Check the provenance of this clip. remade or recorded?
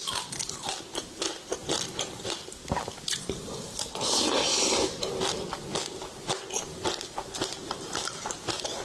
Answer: recorded